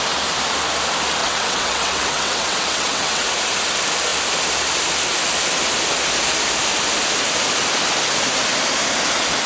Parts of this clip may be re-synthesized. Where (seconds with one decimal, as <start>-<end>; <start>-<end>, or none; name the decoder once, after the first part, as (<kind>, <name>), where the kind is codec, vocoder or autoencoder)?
1.2-3.3 (vocoder, WaveNeXt)